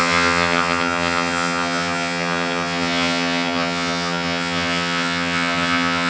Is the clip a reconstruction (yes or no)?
yes